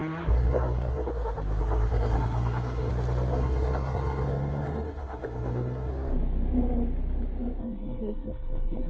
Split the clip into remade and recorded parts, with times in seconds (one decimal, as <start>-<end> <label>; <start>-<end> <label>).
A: 0.0-1.1 remade; 1.1-1.6 recorded; 1.6-2.9 remade; 2.9-3.3 recorded; 3.3-5.9 remade; 5.9-7.6 recorded; 7.6-8.9 remade